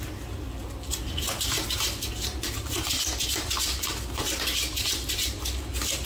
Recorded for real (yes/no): yes